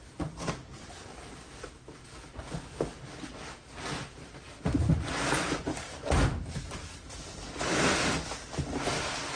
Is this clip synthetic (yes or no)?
no